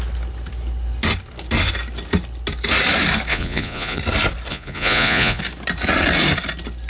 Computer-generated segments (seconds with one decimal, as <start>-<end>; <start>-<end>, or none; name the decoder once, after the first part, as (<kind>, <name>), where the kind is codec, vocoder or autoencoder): 3.3-4.0 (vocoder, Vocos); 4.5-5.4